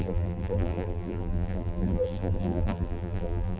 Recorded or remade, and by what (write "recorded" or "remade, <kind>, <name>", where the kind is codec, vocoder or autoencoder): remade, vocoder, BigVGAN v2